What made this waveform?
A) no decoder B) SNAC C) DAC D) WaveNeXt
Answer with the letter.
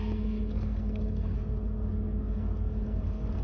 B